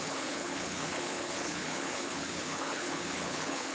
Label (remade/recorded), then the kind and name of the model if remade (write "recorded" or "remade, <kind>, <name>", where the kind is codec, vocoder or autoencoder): remade, codec, HILCodec